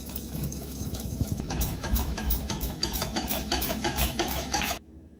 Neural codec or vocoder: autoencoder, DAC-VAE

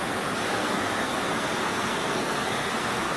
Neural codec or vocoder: codec, SNAC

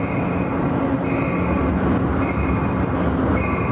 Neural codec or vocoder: none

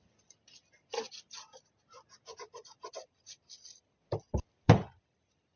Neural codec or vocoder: none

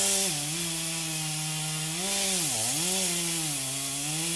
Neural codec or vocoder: none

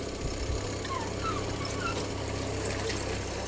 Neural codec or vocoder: none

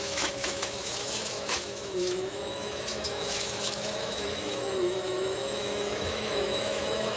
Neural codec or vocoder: autoencoder, DAC-VAE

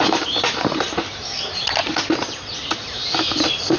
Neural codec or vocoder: none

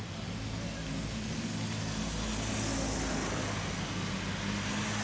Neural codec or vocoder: none